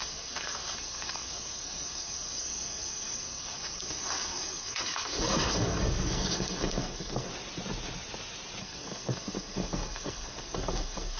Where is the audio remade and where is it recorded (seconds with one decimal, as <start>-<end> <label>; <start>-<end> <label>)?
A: 0.0-7.3 remade; 7.3-8.6 recorded; 8.6-11.2 remade